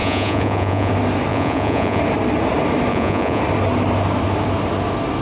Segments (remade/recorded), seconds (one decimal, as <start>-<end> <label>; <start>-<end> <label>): 0.0-0.9 remade; 0.9-1.3 recorded; 1.3-2.0 remade; 2.0-2.9 recorded; 2.9-3.4 remade; 3.4-5.2 recorded